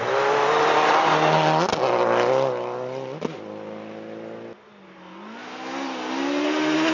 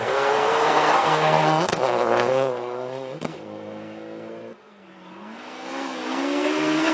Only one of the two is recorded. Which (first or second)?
first